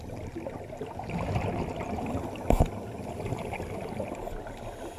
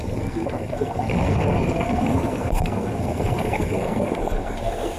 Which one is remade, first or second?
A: second